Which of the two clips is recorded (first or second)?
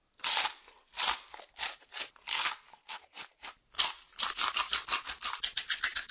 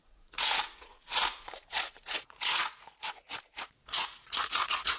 first